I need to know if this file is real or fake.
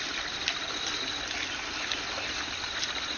real